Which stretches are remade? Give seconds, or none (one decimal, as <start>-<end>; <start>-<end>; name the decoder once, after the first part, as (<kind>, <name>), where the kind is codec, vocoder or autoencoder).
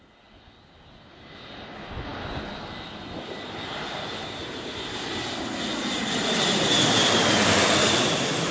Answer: none